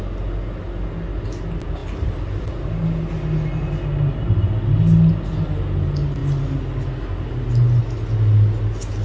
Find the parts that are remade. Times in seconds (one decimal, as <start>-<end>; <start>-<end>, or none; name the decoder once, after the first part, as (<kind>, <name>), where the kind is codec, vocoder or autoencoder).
none